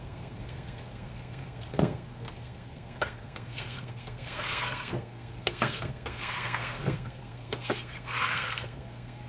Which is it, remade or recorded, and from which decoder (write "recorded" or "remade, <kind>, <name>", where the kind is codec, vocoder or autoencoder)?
remade, codec, SNAC